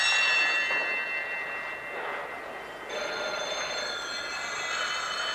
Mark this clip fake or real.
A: real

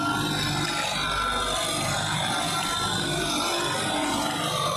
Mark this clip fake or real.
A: real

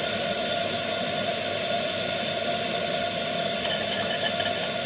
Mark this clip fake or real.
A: real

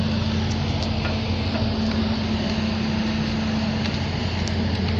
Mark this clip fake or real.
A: real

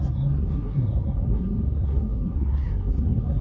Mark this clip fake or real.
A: fake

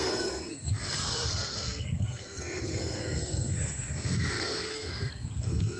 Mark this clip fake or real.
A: fake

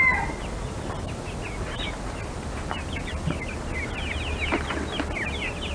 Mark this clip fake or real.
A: real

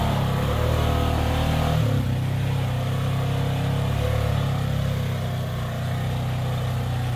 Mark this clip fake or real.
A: real